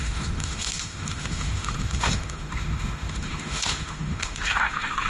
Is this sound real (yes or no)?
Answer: no